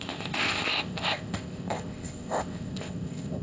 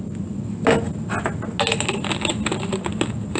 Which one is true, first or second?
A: second